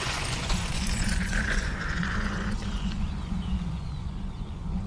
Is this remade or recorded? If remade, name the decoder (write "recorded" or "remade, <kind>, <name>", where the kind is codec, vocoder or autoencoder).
remade, vocoder, Vocos